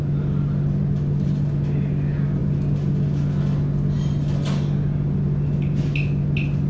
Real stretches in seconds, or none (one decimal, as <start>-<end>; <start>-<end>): 0.0-6.7